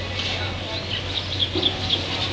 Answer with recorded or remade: recorded